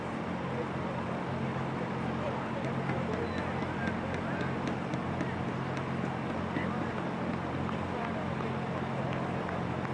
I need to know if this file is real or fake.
real